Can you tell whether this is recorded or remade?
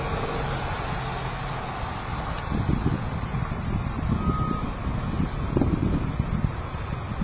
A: recorded